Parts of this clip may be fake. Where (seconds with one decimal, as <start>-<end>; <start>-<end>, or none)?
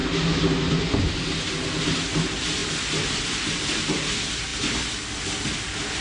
none